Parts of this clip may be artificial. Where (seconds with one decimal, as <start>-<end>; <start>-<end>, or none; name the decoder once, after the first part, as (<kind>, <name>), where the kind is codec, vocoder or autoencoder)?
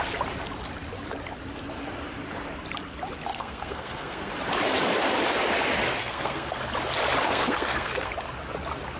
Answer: 3.3-4.3 (codec, SNAC); 6.0-6.6; 7.3-8.1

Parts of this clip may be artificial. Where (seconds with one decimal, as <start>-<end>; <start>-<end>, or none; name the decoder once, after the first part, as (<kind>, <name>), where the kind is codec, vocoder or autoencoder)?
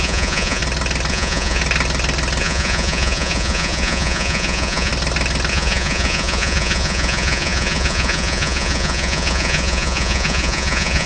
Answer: 0.0-0.6 (vocoder, Vocos); 1.1-1.6; 2.4-4.9; 5.5-11.1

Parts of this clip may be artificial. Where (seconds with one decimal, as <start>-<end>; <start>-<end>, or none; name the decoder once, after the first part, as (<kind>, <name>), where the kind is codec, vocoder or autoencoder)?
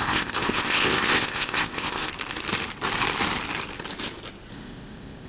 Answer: 0.0-2.1 (codec, ZipCodec); 4.5-5.3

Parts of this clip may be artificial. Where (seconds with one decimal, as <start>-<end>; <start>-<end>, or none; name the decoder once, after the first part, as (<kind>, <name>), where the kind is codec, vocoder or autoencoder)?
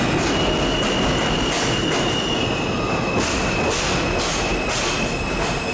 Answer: none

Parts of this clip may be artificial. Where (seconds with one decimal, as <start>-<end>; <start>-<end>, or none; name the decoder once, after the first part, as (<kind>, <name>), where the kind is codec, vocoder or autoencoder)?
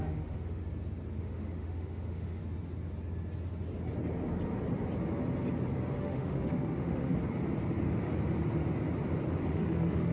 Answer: 0.0-0.6 (autoencoder, DAC-VAE); 1.2-2.4; 6.0-7.1; 9.5-10.1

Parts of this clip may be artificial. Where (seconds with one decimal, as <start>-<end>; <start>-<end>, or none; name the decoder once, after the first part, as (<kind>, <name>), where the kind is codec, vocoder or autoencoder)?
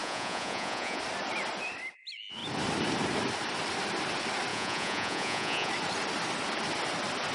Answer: 0.0-1.0 (vocoder, Vocos); 4.5-5.7